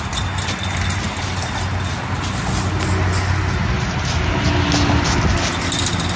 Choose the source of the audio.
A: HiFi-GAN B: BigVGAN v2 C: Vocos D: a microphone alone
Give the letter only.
D